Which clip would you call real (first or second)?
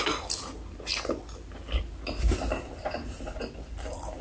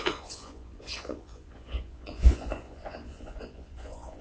first